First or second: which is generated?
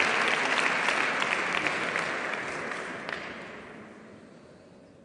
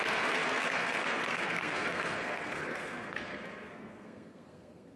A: second